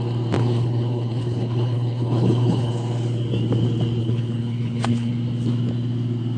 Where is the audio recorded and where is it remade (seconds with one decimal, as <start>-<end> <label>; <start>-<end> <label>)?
0.0-0.4 recorded; 0.4-2.7 remade; 2.7-4.0 recorded; 4.0-5.1 remade; 5.1-6.4 recorded